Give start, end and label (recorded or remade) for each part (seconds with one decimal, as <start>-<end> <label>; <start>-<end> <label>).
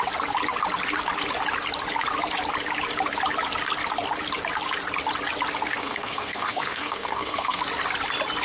0.0-5.8 recorded; 5.8-7.6 remade; 7.6-8.4 recorded